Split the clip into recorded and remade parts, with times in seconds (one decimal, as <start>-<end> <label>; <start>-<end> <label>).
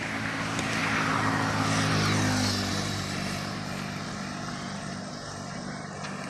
0.0-2.7 recorded; 2.7-5.8 remade; 5.8-6.3 recorded